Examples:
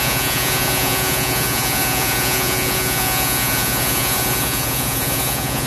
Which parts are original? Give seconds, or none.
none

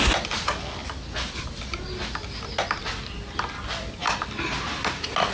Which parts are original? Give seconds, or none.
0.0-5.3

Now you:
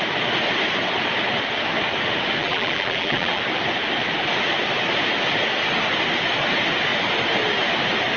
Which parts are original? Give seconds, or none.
0.0-2.4; 3.4-8.2